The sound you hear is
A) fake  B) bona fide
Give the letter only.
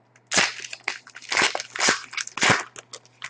B